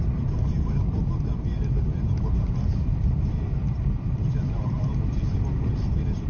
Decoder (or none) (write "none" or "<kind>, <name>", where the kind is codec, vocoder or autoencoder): vocoder, BigVGAN v2